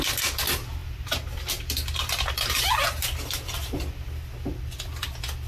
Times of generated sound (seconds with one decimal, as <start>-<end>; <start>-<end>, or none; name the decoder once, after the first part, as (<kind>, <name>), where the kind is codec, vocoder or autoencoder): none

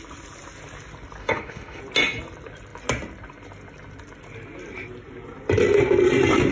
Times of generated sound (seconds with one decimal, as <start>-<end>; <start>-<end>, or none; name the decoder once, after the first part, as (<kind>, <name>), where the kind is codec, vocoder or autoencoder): 1.2-1.8 (autoencoder, DAC-VAE)

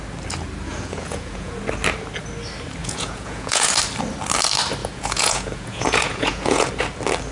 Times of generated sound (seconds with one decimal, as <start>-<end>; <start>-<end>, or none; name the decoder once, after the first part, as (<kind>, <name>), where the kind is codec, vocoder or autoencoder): 0.7-1.6 (vocoder, Vocos); 2.8-3.7; 4.8-6.7